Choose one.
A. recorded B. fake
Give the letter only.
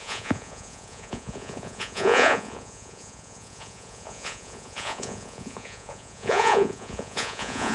B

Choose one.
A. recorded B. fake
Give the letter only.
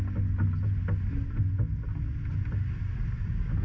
A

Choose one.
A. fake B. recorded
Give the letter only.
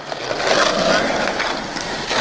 B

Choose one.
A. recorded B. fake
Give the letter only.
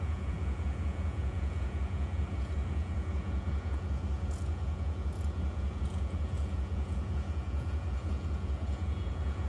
B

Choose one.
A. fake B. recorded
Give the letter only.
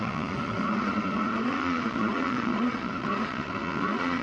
A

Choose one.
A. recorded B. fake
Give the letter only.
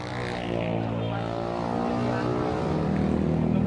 A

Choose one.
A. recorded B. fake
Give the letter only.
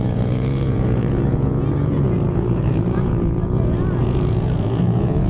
B